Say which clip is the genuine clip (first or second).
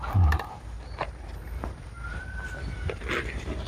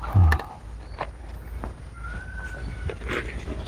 second